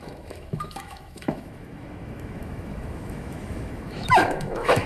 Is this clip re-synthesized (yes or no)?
yes